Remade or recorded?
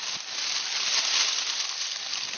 remade